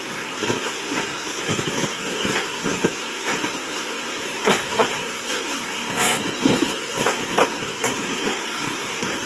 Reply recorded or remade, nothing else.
remade